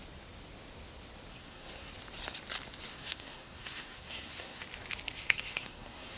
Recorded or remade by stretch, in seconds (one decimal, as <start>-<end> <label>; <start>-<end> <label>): 0.0-1.3 recorded; 1.3-1.9 remade; 1.9-2.9 recorded; 2.9-4.6 remade; 4.6-5.1 recorded; 5.1-6.2 remade